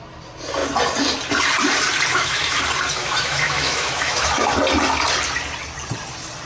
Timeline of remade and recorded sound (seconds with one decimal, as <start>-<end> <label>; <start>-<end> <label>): 0.0-2.1 recorded; 2.1-2.6 remade; 2.6-3.0 recorded; 3.0-4.5 remade; 4.5-6.5 recorded